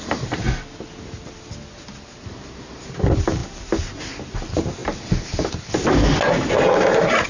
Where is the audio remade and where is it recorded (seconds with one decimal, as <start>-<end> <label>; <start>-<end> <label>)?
0.0-7.3 recorded

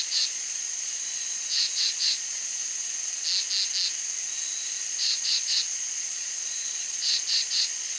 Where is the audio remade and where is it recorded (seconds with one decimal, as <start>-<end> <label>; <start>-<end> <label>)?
0.0-2.6 remade; 2.6-4.9 recorded; 4.9-8.0 remade

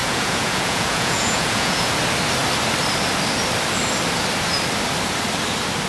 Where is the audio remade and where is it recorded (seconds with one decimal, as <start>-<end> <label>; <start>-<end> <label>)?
0.0-1.9 remade; 1.9-5.9 recorded

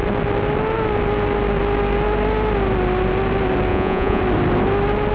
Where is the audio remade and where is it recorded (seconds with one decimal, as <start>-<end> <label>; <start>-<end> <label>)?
0.0-3.7 recorded; 3.7-4.2 remade; 4.2-5.1 recorded

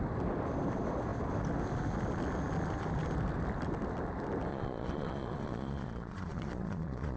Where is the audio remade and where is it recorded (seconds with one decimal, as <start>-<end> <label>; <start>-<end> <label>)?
0.0-4.5 recorded; 4.5-7.2 remade